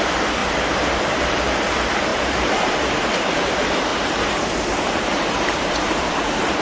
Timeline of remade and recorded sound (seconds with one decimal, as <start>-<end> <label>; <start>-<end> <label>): 0.0-0.4 recorded; 0.4-1.4 remade; 1.4-2.1 recorded; 2.1-2.7 remade; 2.7-3.9 recorded; 3.9-6.0 remade; 6.0-6.6 recorded